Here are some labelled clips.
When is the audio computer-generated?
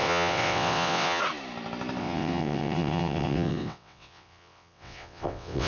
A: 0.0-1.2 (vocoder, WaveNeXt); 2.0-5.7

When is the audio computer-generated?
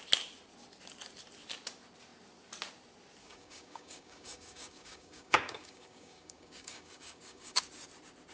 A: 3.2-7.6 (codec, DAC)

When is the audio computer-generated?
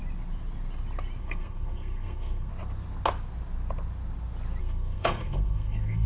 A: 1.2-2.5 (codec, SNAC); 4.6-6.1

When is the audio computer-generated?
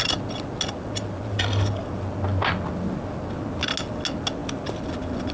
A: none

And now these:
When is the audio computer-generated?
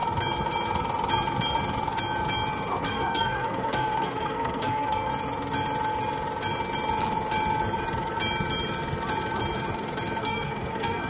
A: 2.8-5.1 (codec, SNAC); 10.2-11.1